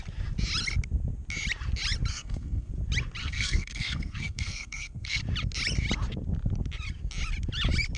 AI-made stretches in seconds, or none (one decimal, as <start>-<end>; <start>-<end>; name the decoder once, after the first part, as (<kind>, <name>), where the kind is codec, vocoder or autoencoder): 2.1-2.7 (codec, SNAC); 3.2-5.2